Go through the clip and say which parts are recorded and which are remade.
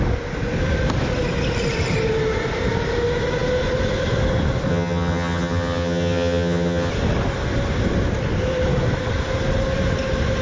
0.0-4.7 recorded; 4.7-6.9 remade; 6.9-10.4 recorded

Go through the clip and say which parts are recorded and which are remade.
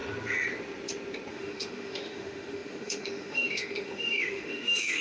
0.0-1.3 recorded; 1.3-5.0 remade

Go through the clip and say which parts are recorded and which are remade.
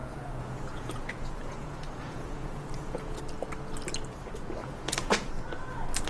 0.0-3.2 remade; 3.2-4.6 recorded; 4.6-5.3 remade; 5.3-6.1 recorded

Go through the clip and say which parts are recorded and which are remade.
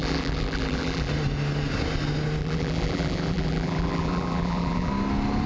0.0-1.1 remade; 1.1-2.4 recorded; 2.4-4.9 remade; 4.9-5.5 recorded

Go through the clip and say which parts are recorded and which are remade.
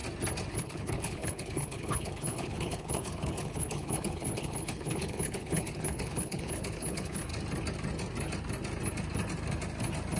0.0-0.5 recorded; 0.5-7.3 remade; 7.3-10.2 recorded